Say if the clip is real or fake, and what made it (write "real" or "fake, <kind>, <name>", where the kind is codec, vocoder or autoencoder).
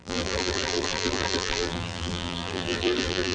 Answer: fake, vocoder, BigVGAN v2